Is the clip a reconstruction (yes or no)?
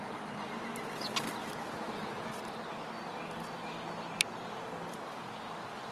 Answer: no